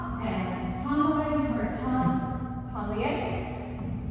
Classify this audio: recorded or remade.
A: recorded